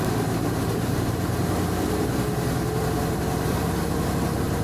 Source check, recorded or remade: recorded